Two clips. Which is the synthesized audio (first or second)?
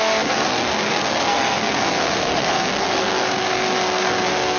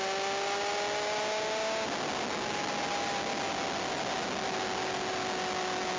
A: first